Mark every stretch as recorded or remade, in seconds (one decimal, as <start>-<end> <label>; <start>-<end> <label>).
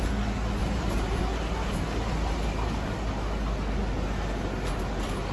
0.0-0.6 recorded; 0.6-1.2 remade; 1.2-5.3 recorded